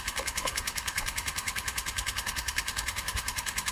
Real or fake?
fake